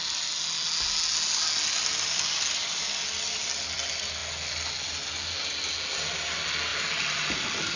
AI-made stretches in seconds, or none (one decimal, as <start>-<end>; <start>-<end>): none